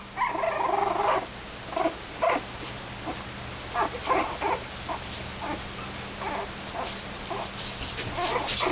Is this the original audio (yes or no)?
yes